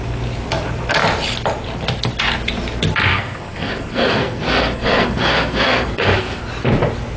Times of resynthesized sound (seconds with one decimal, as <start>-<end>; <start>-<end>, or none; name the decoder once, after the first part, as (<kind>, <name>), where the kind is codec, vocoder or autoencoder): 3.1-6.4 (codec, SNAC)